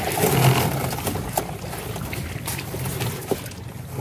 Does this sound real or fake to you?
real